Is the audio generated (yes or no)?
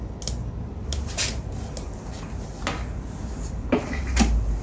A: no